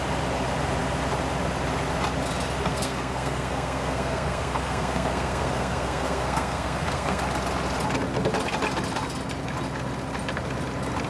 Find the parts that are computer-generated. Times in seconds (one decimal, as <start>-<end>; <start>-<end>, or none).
2.7-7.2